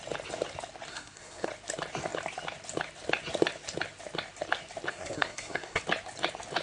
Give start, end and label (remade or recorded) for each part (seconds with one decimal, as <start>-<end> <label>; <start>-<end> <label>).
0.0-0.9 recorded; 0.9-1.5 remade; 1.5-4.9 recorded; 4.9-5.8 remade; 5.8-6.6 recorded